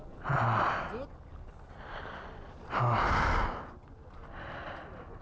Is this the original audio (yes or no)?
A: yes